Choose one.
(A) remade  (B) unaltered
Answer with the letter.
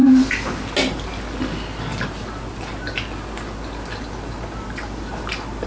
B